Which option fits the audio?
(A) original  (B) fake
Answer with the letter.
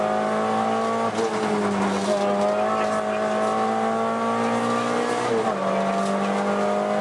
A